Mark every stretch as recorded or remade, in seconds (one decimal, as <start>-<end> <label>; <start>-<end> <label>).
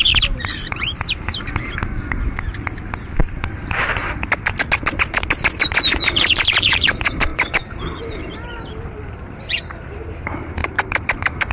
0.0-1.3 remade; 1.3-3.2 recorded; 3.2-4.0 remade; 4.0-5.9 recorded; 5.9-11.5 remade